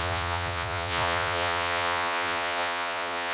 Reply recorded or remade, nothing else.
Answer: remade